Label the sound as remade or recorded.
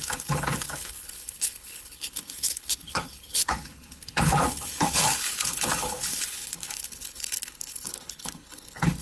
remade